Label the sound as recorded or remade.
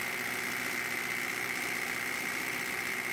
recorded